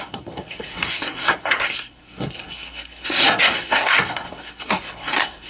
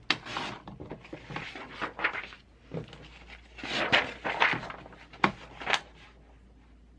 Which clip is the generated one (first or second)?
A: first